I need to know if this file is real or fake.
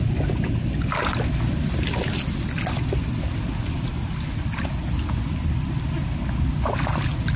real